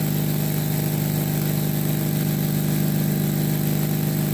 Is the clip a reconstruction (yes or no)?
no